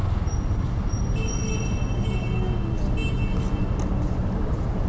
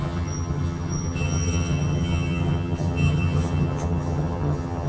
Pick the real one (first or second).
first